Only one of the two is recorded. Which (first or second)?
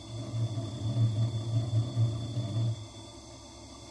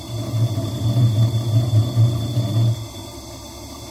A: first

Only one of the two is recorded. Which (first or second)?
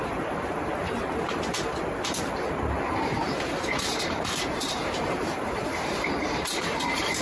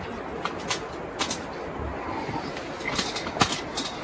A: second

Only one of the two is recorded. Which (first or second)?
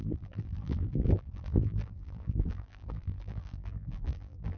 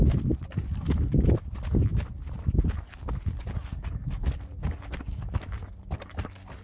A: second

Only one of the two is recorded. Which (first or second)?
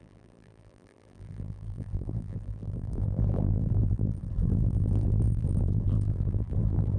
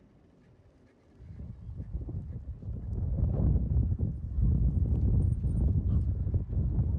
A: second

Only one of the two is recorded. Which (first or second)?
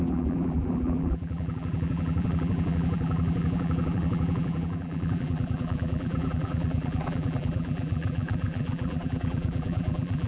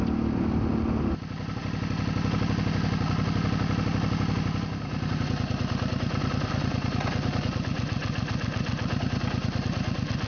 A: second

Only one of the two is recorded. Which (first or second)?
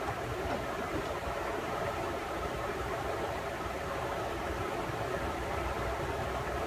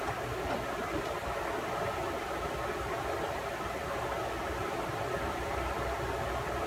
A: second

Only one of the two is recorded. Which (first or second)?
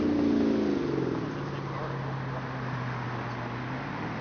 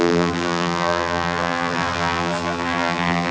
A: first